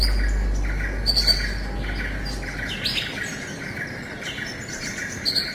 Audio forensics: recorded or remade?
recorded